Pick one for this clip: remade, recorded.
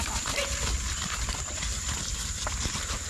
recorded